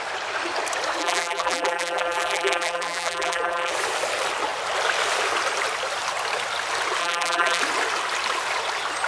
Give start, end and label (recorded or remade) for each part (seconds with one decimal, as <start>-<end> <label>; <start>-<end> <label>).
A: 0.0-1.0 recorded; 1.0-3.7 remade; 3.7-7.0 recorded; 7.0-7.6 remade; 7.6-9.1 recorded